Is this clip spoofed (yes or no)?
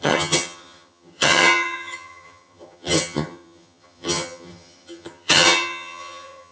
yes